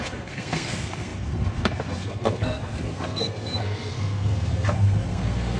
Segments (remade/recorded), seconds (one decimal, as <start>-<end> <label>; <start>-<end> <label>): 0.0-5.6 remade